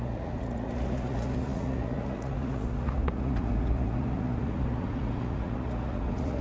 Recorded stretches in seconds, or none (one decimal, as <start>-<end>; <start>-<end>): none